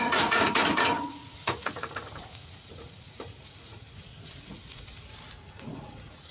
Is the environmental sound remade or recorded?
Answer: remade